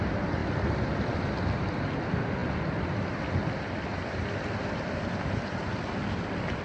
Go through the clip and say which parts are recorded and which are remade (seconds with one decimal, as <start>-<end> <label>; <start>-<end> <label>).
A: 0.0-0.4 recorded; 0.4-1.2 remade; 1.2-3.9 recorded; 3.9-5.1 remade; 5.1-6.6 recorded